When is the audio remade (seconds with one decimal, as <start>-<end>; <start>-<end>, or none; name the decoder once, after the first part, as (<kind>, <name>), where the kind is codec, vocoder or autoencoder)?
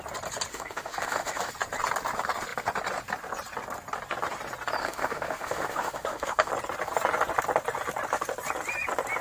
0.5-1.5 (autoencoder, DAC-VAE); 4.8-6.5